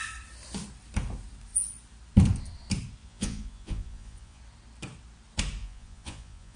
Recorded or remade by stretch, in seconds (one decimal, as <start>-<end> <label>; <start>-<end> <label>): 0.0-3.0 recorded; 3.0-4.4 remade; 4.4-5.6 recorded; 5.6-6.6 remade